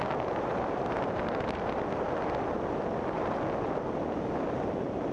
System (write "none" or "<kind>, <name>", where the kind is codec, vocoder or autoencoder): none